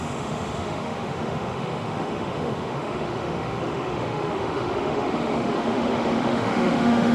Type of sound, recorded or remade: remade